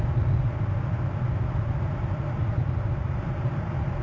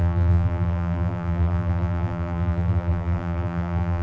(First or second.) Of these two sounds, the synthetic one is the second